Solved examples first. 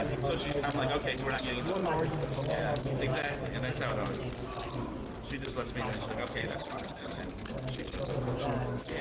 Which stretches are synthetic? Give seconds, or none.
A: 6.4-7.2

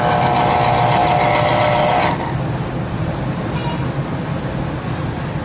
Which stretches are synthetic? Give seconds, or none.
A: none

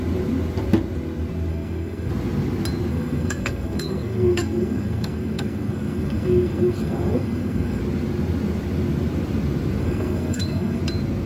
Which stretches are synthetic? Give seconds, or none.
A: 1.5-2.1; 2.9-7.8; 9.8-10.8

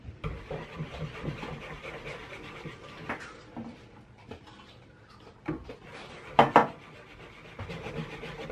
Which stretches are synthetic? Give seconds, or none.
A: none

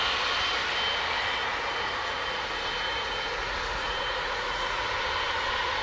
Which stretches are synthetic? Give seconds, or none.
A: 1.4-4.9

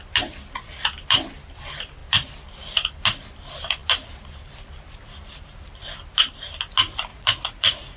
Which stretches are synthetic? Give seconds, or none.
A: 7.1-8.0

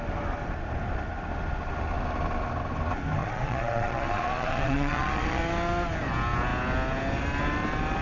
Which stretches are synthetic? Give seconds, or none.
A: 3.2-5.4

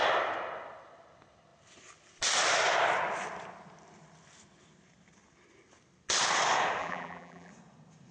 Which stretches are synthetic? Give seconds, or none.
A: 6.8-7.5